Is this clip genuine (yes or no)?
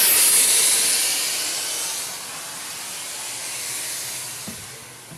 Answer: yes